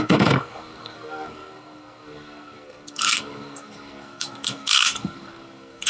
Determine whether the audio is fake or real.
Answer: fake